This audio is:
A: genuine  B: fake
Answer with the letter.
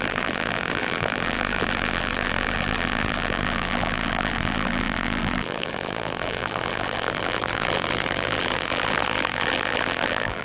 B